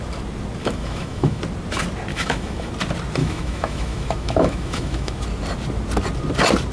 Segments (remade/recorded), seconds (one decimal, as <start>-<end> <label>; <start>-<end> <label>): 0.0-0.6 recorded; 0.6-1.4 remade; 1.4-2.1 recorded; 2.1-2.7 remade; 2.7-3.2 recorded; 3.2-5.2 remade; 5.2-6.7 recorded